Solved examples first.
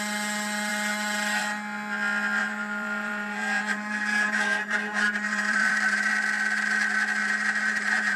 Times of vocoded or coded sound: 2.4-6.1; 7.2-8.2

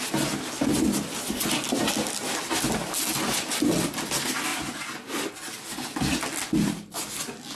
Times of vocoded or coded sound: none

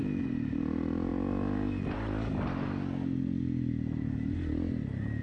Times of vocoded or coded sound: 0.0-0.6

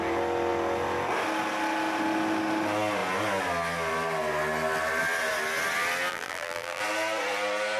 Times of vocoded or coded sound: 6.1-6.8